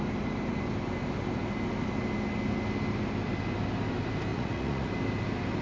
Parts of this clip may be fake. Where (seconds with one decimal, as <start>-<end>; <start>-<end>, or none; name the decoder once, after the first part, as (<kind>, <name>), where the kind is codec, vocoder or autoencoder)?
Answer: 4.3-4.9 (vocoder, Vocos)